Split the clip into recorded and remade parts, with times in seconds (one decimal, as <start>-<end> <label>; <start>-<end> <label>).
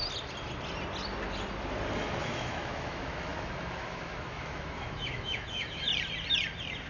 0.0-2.2 recorded; 2.2-5.9 remade; 5.9-6.9 recorded